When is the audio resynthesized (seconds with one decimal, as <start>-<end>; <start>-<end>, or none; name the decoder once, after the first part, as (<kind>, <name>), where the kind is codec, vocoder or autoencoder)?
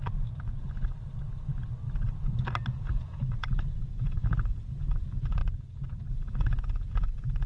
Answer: 2.7-5.4 (vocoder, Vocos); 6.1-7.5